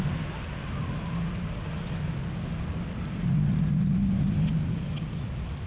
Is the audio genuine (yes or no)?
yes